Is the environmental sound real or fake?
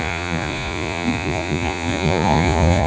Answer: fake